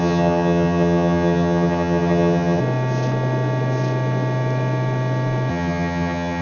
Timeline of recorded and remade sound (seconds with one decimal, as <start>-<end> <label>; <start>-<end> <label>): 0.0-2.6 remade; 2.6-5.5 recorded; 5.5-6.4 remade